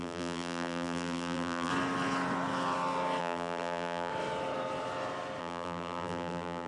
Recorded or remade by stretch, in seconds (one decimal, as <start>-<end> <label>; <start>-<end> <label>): 0.0-1.7 remade; 1.7-3.2 recorded; 3.2-4.1 remade; 4.1-5.4 recorded; 5.4-6.7 remade